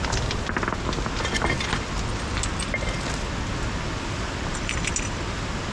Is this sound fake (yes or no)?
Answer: no